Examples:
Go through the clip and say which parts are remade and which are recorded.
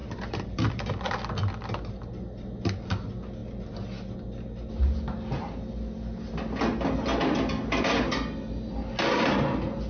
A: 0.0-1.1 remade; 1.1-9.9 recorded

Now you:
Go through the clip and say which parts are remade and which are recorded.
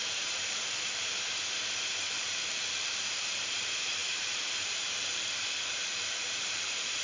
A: 0.0-1.1 remade; 1.1-2.1 recorded; 2.1-7.0 remade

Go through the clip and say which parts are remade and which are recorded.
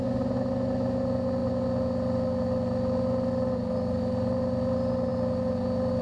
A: 0.0-6.0 recorded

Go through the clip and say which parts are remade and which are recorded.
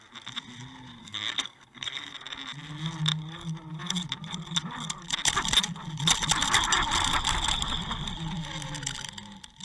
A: 0.0-1.0 recorded; 1.0-2.1 remade; 2.1-9.6 recorded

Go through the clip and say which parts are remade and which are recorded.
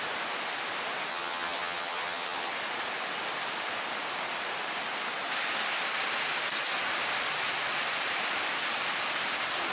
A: 0.0-1.1 recorded; 1.1-2.5 remade; 2.5-9.7 recorded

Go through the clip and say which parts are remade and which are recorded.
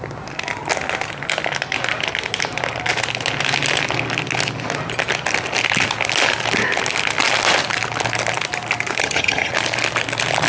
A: 0.0-9.0 recorded; 9.0-9.5 remade; 9.5-10.5 recorded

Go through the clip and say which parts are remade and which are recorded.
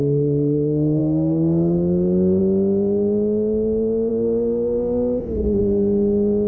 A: 0.0-1.0 recorded; 1.0-2.4 remade; 2.4-4.1 recorded; 4.1-5.6 remade; 5.6-6.5 recorded